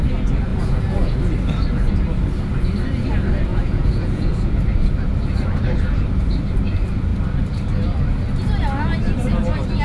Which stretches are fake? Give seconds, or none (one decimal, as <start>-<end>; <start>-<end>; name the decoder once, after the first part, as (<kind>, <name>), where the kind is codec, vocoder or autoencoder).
0.5-1.2 (vocoder, Vocos); 3.5-4.3